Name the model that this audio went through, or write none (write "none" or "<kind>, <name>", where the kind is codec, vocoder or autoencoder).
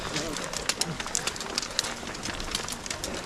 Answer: none